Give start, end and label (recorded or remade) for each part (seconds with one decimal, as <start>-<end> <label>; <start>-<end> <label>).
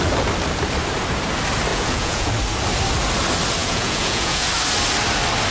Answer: 0.0-1.7 recorded; 1.7-2.3 remade; 2.3-3.6 recorded; 3.6-4.5 remade; 4.5-5.5 recorded